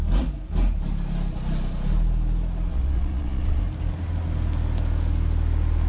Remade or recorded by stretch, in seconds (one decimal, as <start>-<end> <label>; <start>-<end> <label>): 0.0-2.7 recorded; 2.7-3.6 remade; 3.6-5.9 recorded